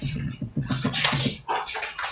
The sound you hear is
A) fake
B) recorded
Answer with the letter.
A